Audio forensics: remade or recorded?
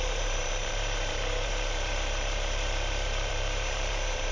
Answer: remade